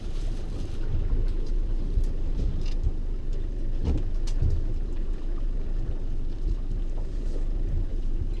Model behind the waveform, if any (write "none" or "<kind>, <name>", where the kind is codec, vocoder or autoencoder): vocoder, BigVGAN v2